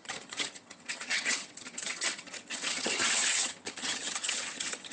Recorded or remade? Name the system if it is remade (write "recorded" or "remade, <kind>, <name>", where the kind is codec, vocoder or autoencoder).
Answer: remade, vocoder, HiFi-GAN